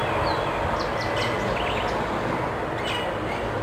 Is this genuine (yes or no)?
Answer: yes